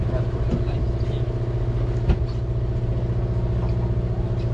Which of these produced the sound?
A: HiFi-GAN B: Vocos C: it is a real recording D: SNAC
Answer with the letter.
C